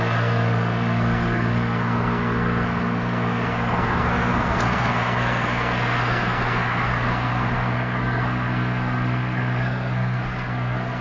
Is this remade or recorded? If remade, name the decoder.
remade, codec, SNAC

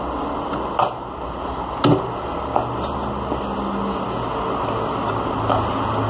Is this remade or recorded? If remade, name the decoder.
recorded